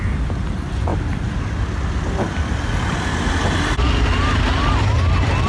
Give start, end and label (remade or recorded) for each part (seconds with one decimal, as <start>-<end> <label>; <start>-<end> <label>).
0.0-5.5 recorded